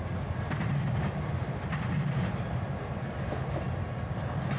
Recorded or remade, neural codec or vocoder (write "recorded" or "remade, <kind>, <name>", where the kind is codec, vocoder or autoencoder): recorded